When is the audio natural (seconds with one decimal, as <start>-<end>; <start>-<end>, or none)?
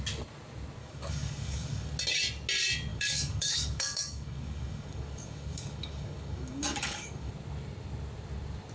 0.0-0.8; 1.9-2.9; 7.3-8.7